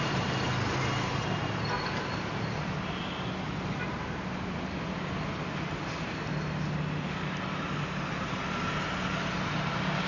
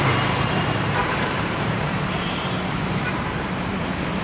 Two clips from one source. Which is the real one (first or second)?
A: first